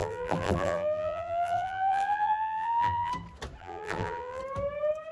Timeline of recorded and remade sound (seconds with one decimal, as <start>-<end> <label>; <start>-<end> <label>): 0.0-3.1 remade; 3.1-3.6 recorded; 3.6-4.4 remade; 4.4-5.1 recorded